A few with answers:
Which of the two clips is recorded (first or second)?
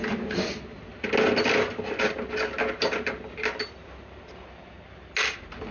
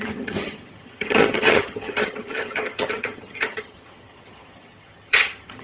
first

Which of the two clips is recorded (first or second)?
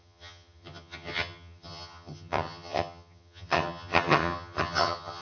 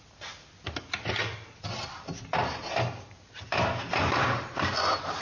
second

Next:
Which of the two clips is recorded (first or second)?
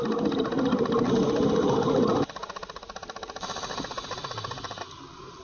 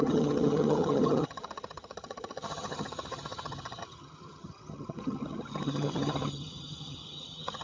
first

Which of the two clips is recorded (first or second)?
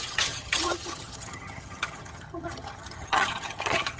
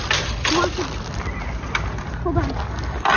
second